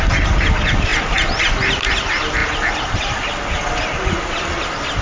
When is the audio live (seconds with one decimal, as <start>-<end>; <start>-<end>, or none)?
0.0-5.0